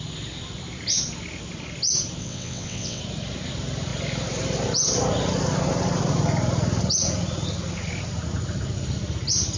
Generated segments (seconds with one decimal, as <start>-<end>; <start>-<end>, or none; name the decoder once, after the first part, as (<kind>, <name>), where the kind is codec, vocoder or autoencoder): 2.2-3.0 (vocoder, WaveNeXt)